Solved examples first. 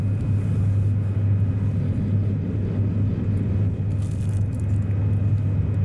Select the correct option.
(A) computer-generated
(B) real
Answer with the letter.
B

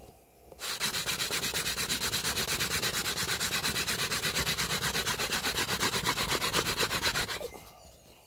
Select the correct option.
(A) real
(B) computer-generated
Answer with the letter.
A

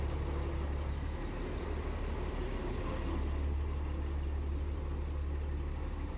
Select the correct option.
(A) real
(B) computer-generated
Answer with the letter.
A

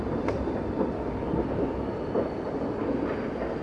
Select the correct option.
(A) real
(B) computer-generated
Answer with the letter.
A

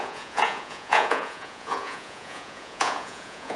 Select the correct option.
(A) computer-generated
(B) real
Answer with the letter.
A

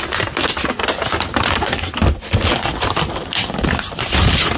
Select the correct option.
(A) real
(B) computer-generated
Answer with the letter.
A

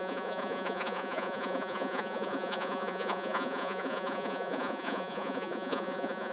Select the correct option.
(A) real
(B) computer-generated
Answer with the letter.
B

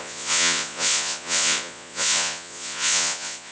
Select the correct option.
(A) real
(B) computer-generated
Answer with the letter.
B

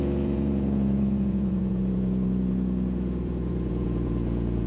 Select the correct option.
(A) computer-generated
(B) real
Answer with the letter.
A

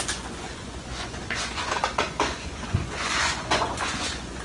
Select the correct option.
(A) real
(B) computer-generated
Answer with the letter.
B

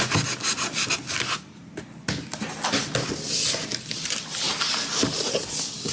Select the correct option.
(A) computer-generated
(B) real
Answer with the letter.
B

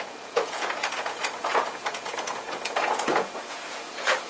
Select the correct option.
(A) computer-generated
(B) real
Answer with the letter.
A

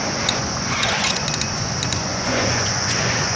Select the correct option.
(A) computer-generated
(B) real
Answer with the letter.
A